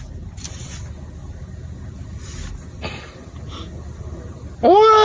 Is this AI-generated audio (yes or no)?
no